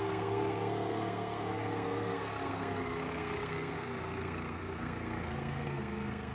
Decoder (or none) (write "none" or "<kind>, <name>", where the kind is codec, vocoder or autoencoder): codec, SNAC